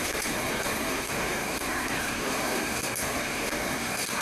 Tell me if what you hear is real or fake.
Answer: fake